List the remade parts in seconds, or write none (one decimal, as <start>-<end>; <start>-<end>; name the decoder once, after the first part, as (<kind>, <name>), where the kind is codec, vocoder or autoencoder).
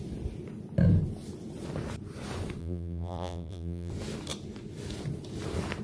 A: 2.6-3.9 (vocoder, BigVGAN v2)